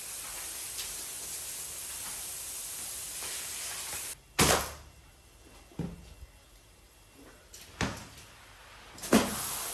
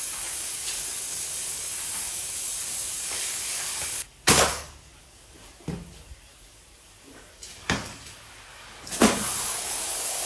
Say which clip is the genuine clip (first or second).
first